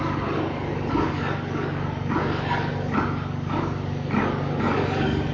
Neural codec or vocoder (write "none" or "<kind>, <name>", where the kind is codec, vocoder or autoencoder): codec, DAC